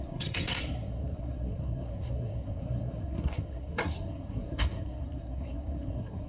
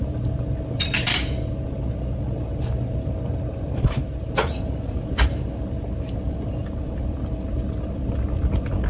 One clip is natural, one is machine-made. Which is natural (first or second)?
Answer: second